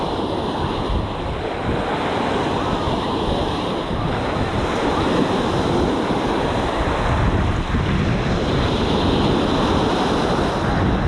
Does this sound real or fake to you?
real